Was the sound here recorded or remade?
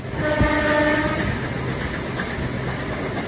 recorded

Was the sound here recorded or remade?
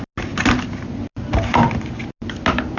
recorded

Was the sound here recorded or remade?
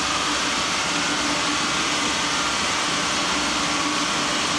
recorded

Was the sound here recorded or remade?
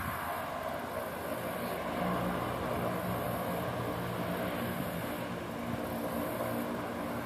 recorded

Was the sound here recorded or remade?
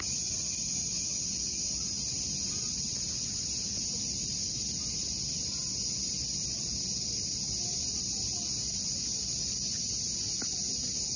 recorded